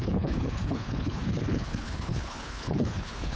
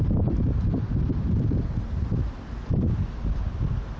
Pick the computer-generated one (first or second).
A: first